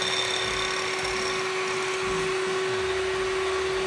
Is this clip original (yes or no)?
yes